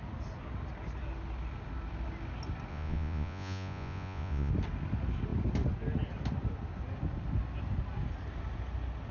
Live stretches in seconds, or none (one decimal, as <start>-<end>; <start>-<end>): 0.0-2.7; 4.5-9.1